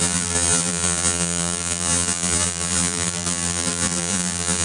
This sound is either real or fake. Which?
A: fake